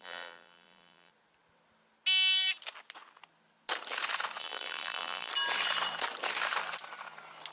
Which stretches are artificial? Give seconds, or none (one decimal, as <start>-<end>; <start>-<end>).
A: 0.0-1.1; 4.4-5.3